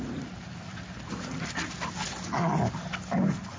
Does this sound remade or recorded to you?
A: recorded